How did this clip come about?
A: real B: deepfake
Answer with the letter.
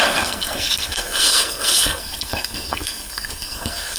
B